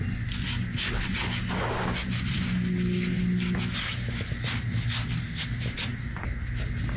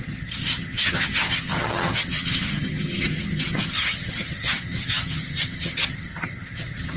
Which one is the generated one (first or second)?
second